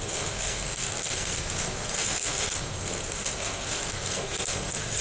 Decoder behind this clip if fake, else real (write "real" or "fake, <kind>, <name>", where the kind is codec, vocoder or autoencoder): fake, codec, SNAC